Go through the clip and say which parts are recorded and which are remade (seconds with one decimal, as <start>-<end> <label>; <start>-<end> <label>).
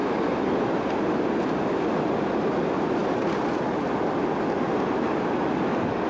0.0-0.6 remade; 0.6-3.0 recorded; 3.0-5.4 remade; 5.4-6.1 recorded